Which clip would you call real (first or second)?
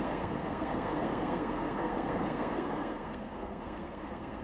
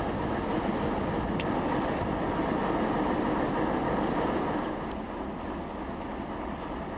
second